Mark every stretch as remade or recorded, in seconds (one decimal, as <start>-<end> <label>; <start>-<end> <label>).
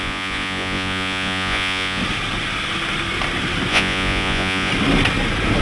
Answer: 0.0-2.0 remade; 2.0-3.7 recorded; 3.7-4.7 remade; 4.7-5.6 recorded